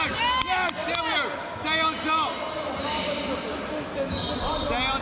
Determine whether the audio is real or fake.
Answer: real